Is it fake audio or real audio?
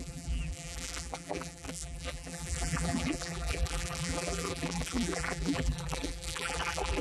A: fake